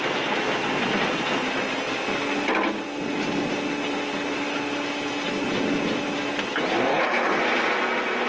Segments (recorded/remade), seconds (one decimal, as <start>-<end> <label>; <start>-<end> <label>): 0.0-6.9 recorded; 6.9-7.4 remade; 7.4-8.3 recorded